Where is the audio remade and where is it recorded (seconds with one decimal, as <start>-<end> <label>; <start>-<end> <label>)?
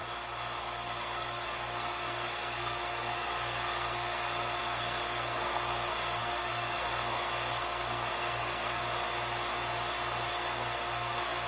0.0-0.6 recorded; 0.6-8.8 remade; 8.8-10.3 recorded; 10.3-11.5 remade